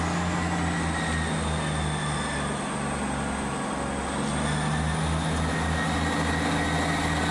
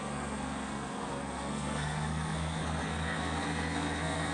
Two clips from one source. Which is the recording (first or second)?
first